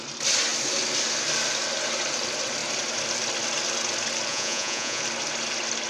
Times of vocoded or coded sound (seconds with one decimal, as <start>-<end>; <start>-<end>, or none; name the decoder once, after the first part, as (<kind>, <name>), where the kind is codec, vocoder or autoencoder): 4.3-5.0 (vocoder, Vocos)